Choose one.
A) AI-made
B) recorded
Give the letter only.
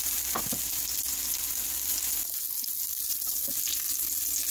B